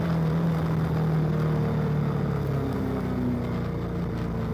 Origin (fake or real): real